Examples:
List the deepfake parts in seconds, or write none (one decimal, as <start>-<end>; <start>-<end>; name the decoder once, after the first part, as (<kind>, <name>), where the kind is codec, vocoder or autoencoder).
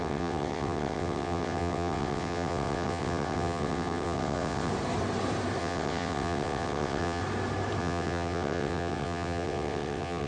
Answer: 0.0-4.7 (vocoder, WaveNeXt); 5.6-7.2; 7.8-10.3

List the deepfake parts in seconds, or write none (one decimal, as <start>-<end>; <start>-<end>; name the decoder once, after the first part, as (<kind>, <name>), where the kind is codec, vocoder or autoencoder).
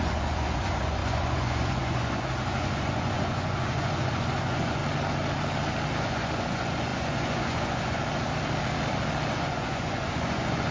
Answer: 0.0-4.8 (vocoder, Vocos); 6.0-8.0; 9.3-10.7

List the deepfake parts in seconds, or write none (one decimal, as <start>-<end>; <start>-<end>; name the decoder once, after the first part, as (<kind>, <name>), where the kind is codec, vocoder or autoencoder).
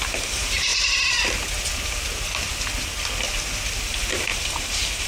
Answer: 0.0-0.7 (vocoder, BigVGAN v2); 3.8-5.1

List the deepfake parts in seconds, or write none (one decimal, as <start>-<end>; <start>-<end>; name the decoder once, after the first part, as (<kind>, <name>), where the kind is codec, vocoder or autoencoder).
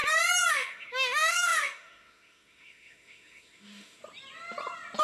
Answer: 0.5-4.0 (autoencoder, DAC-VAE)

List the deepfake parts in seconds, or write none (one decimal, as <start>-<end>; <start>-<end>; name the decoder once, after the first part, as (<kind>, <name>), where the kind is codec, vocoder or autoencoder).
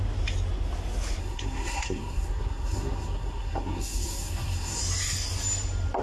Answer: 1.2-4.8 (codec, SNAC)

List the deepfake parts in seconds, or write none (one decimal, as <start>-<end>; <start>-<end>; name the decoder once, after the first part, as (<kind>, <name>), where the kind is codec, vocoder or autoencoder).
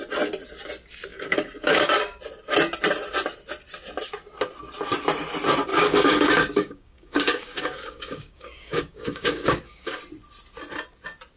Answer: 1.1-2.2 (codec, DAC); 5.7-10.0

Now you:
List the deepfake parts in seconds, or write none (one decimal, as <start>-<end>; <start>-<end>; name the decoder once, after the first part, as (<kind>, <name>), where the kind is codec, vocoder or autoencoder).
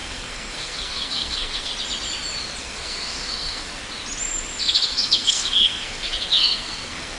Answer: 0.0-1.7 (codec, SNAC); 2.6-3.8; 4.6-7.2